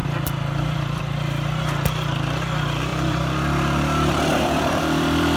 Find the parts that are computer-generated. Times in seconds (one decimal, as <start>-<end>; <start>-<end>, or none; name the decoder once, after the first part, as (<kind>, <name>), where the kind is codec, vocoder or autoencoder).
0.0-1.0 (vocoder, BigVGAN v2); 2.9-5.4

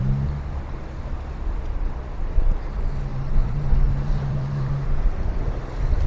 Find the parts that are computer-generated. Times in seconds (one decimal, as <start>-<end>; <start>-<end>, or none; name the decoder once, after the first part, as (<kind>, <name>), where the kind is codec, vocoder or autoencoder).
3.1-5.5 (vocoder, BigVGAN v2)